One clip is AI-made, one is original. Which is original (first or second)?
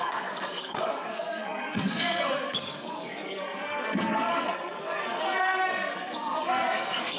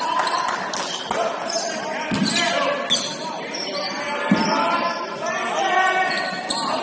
second